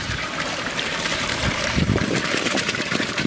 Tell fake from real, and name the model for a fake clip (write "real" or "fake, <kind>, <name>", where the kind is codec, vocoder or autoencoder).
fake, vocoder, BigVGAN v2